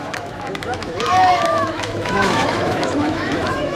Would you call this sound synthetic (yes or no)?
yes